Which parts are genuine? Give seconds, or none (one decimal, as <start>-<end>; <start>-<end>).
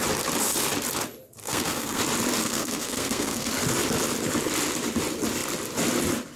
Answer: 0.0-1.4; 2.0-2.4; 3.5-6.4